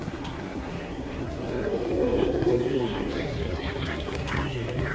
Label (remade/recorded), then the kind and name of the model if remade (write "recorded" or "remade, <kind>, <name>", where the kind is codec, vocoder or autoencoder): remade, codec, SNAC